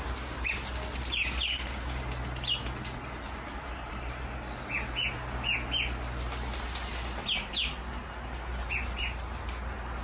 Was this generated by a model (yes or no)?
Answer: no